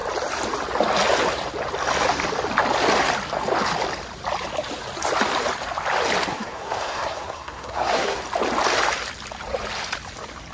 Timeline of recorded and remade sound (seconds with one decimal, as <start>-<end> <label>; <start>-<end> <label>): 0.0-6.3 recorded; 6.3-8.2 remade; 8.2-10.5 recorded